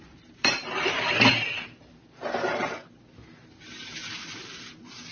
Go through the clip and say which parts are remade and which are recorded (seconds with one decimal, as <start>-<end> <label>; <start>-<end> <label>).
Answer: 0.0-1.9 remade; 1.9-3.6 recorded; 3.6-5.1 remade